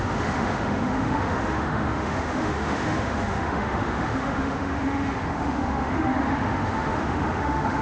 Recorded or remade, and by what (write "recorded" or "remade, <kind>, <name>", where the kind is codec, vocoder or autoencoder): remade, autoencoder, DAC-VAE